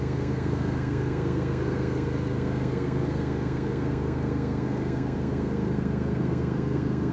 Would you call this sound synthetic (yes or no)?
yes